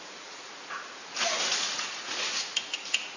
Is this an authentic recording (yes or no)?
no